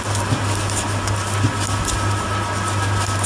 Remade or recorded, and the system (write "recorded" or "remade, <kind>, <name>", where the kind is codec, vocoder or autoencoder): recorded